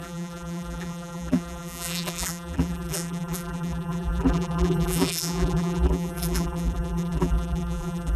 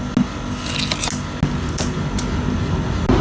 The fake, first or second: first